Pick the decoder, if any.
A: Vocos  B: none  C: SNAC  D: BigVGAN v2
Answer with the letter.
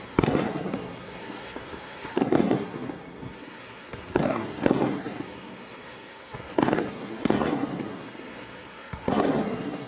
C